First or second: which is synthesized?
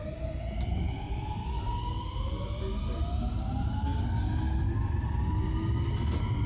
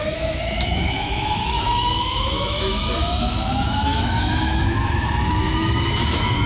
second